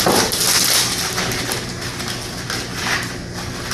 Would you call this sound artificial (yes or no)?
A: no